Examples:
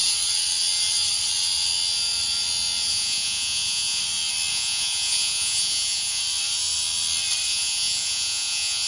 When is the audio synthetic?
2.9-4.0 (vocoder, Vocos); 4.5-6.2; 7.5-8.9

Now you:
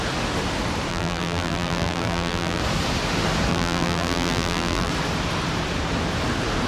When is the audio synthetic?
0.9-2.6 (vocoder, BigVGAN v2); 3.5-4.9

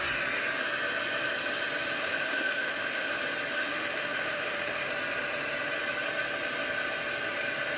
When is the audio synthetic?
2.0-3.1 (autoencoder, DAC-VAE); 3.6-4.9

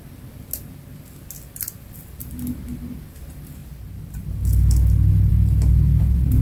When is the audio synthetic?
none

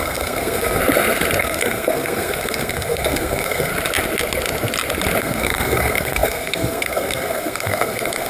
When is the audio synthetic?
0.0-0.8 (codec, SNAC); 1.4-3.7; 5.2-8.3